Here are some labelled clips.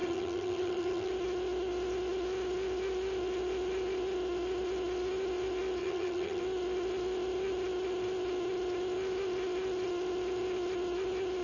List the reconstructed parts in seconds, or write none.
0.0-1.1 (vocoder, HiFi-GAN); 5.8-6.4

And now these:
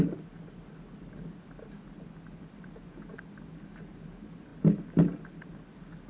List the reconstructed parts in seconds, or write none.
none

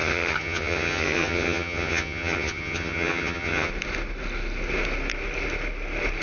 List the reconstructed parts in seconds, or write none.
0.0-3.7 (vocoder, HiFi-GAN)

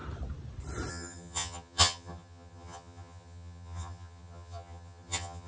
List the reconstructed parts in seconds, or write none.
0.9-5.5 (vocoder, HiFi-GAN)